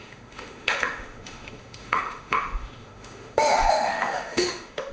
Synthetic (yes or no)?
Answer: yes